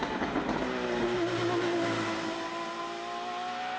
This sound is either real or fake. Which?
real